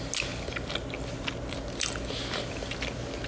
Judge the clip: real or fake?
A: real